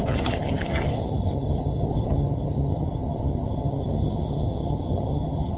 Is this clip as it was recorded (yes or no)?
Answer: no